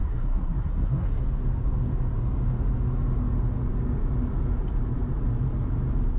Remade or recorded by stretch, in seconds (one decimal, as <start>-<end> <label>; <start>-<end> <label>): 0.0-1.2 remade; 1.2-6.2 recorded